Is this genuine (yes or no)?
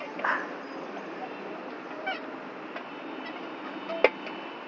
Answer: yes